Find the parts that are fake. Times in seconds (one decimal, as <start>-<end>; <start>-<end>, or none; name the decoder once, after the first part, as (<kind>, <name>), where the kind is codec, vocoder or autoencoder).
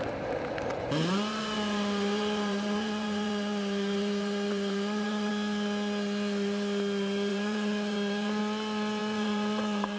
0.7-5.3 (vocoder, Vocos); 7.3-8.4; 9.0-10.0